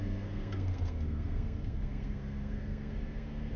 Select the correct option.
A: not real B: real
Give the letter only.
A